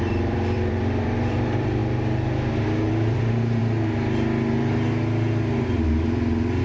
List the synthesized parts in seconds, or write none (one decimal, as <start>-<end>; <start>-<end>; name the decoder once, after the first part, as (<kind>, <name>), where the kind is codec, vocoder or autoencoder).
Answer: 0.0-1.8 (vocoder, BigVGAN v2); 2.9-3.6